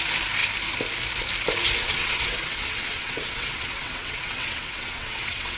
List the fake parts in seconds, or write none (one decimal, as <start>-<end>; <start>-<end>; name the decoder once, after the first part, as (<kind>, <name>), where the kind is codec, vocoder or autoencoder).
1.8-5.6 (vocoder, WaveNeXt)